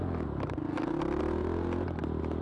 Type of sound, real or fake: real